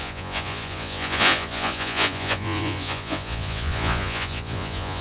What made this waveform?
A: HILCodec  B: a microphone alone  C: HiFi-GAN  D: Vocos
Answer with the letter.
D